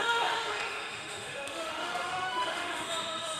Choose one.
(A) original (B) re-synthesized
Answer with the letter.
B